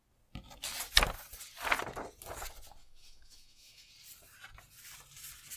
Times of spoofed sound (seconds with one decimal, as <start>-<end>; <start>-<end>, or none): 2.8-3.9